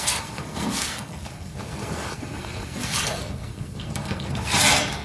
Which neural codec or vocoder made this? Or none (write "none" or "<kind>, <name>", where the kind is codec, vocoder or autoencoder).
codec, SNAC